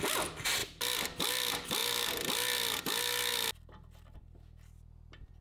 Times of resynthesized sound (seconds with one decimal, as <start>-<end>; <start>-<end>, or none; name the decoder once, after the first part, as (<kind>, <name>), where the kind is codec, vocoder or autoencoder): none